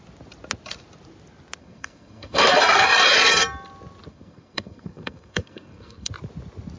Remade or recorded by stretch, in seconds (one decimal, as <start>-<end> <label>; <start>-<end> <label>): 0.0-1.6 recorded; 1.6-2.6 remade; 2.6-4.1 recorded; 4.1-6.1 remade; 6.1-6.8 recorded